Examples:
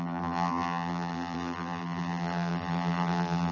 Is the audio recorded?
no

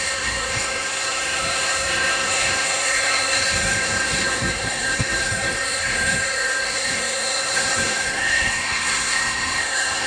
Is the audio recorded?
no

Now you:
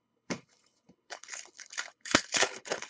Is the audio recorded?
no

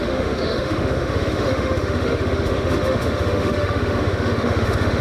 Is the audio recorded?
no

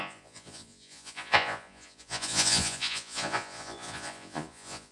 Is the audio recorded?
no